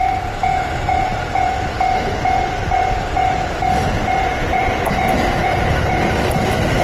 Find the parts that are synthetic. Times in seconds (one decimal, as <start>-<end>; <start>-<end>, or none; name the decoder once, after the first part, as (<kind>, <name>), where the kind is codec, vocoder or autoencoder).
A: 0.0-6.8 (vocoder, BigVGAN v2)